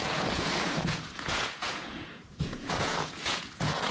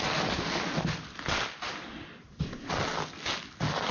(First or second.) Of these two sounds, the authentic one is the second